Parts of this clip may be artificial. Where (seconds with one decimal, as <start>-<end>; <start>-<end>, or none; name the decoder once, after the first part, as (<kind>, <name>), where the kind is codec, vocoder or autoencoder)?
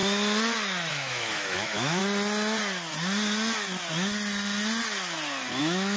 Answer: 0.9-2.0 (autoencoder, DAC-VAE); 5.6-6.0